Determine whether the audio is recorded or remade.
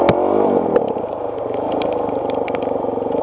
recorded